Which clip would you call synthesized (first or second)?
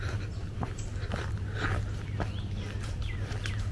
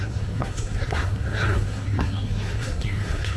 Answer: second